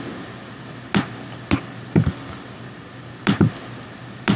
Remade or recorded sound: recorded